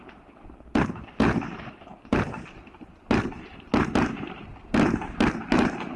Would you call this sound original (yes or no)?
yes